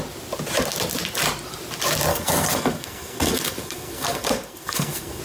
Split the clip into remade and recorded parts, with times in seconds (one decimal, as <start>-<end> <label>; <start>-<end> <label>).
0.0-2.1 recorded; 2.1-5.2 remade